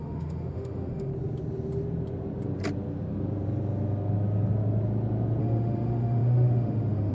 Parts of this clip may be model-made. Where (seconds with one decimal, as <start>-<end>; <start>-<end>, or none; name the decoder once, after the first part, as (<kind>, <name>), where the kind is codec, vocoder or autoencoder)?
0.0-1.1 (autoencoder, DAC-VAE); 5.4-7.1